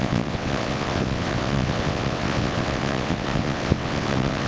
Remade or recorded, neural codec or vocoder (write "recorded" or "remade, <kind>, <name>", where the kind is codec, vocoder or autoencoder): remade, vocoder, WaveNeXt